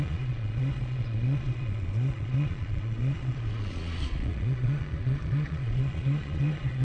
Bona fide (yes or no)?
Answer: no